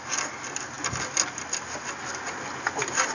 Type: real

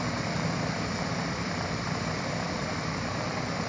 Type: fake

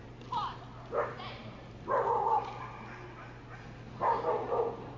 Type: real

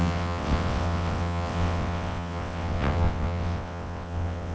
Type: fake